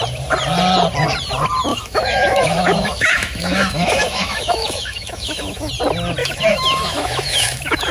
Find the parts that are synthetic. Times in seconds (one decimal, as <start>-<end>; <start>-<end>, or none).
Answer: 1.7-5.7; 6.2-7.9